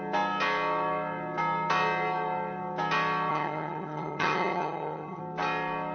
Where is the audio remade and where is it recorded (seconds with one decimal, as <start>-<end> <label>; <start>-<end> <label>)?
0.0-3.3 recorded; 3.3-5.2 remade; 5.2-5.9 recorded